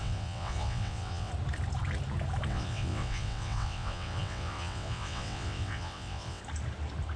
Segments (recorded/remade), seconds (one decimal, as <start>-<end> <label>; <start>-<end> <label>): 0.0-1.3 remade; 1.3-2.5 recorded; 2.5-6.4 remade; 6.4-7.2 recorded